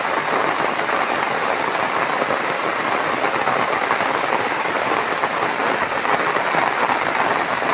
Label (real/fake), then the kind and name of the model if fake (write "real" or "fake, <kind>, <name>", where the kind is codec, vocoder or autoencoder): real